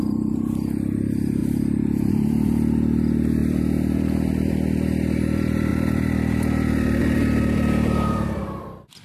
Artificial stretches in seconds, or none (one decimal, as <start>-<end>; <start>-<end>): 0.0-1.4; 2.1-9.0